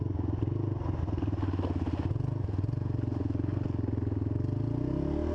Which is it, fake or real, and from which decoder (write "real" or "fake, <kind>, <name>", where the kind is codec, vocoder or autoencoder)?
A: real